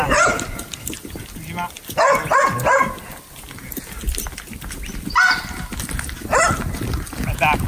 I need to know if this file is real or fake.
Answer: real